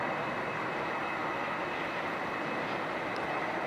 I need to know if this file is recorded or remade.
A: recorded